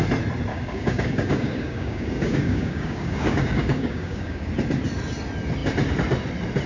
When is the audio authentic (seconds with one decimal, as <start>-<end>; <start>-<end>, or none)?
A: 0.0-0.5; 4.5-6.7